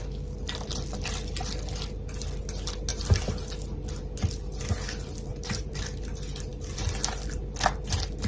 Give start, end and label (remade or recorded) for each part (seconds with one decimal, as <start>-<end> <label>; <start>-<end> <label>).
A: 0.0-5.3 recorded; 5.3-5.8 remade; 5.8-8.3 recorded